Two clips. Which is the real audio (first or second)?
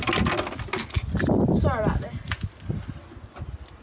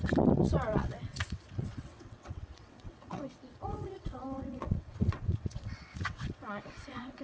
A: first